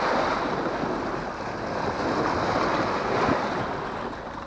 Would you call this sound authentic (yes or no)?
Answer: yes